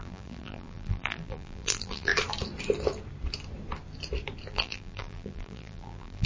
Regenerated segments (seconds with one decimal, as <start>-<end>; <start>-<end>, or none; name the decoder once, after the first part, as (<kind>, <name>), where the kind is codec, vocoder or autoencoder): 0.0-2.1 (vocoder, BigVGAN v2); 4.5-6.3